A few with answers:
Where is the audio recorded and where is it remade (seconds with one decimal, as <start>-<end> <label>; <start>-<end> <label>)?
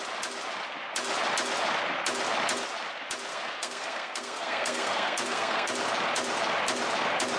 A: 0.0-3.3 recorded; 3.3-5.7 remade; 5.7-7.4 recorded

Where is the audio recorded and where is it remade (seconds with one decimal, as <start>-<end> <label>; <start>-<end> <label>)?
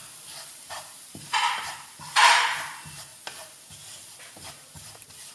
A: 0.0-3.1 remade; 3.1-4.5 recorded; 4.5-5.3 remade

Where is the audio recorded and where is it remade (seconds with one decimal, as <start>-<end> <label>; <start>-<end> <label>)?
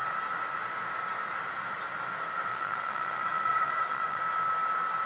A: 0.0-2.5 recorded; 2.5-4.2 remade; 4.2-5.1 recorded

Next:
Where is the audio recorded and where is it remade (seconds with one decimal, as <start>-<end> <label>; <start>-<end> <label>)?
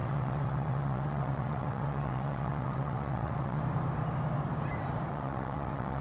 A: 0.0-3.6 remade; 3.6-5.1 recorded; 5.1-6.0 remade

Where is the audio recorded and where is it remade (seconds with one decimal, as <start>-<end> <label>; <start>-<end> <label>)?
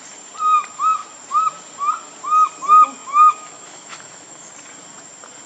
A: 0.0-3.0 recorded; 3.0-4.5 remade; 4.5-5.5 recorded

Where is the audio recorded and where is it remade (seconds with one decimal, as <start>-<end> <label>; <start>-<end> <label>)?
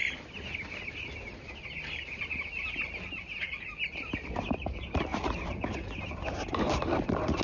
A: 0.0-4.3 recorded; 4.3-5.1 remade; 5.1-6.5 recorded; 6.5-7.4 remade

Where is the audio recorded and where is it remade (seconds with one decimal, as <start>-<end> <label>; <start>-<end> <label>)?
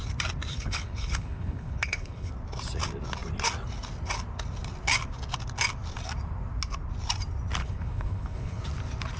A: 0.0-0.5 recorded; 0.5-2.3 remade; 2.3-7.6 recorded; 7.6-8.6 remade; 8.6-9.2 recorded